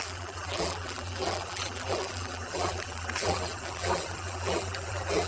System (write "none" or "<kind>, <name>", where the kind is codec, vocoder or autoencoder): vocoder, BigVGAN v2